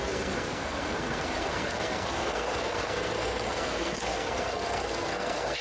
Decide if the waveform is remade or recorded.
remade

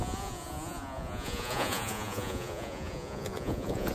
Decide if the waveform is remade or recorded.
remade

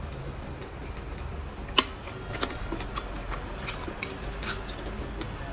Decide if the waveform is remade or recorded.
recorded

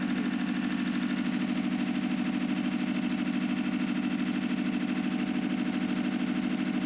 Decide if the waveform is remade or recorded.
recorded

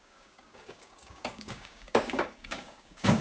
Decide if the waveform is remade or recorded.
remade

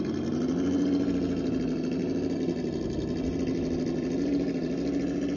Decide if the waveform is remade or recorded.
recorded